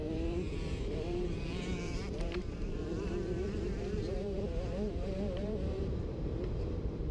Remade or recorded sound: remade